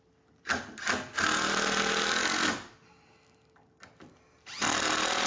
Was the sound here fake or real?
real